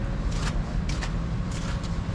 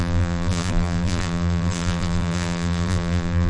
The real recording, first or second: first